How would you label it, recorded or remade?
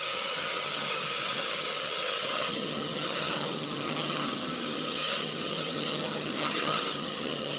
remade